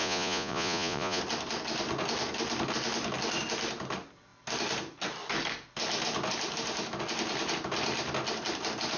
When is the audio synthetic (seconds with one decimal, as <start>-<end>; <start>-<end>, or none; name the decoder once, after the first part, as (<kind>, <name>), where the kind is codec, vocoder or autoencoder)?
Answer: 0.0-1.2 (vocoder, Vocos)